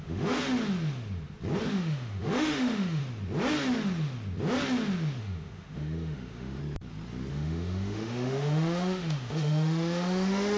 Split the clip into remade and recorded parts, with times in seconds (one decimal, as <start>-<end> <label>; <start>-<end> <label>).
0.0-0.4 remade; 0.4-1.7 recorded; 1.7-3.0 remade; 3.0-5.2 recorded; 5.2-6.6 remade; 6.6-7.3 recorded; 7.3-10.6 remade